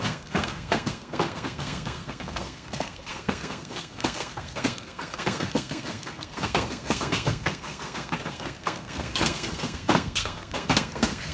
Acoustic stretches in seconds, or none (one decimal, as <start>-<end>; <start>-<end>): none